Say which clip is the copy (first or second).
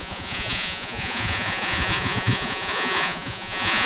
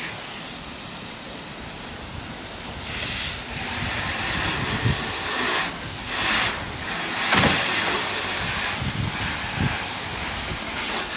first